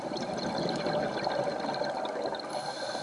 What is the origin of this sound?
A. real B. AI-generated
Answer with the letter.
A